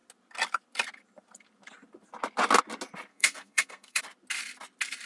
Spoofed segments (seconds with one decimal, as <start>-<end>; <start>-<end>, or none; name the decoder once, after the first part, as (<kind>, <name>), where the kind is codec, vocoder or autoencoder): 3.1-4.0 (codec, SNAC)